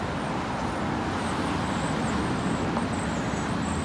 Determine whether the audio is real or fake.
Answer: real